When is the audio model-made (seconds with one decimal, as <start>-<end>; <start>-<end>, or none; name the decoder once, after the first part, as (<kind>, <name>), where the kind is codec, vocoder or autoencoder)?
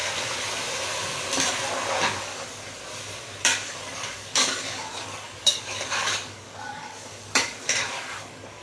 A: 2.2-2.8 (codec, DAC); 3.4-8.6